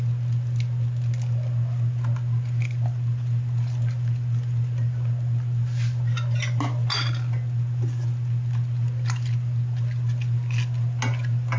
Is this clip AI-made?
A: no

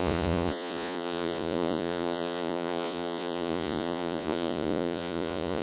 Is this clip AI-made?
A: yes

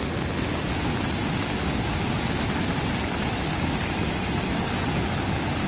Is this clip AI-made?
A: no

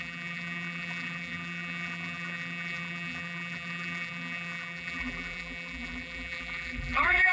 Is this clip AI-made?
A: yes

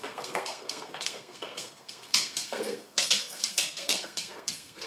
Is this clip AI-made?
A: yes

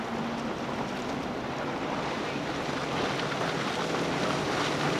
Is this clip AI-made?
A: no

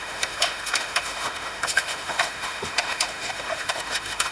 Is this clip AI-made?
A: yes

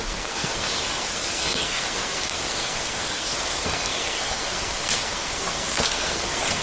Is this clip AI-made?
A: yes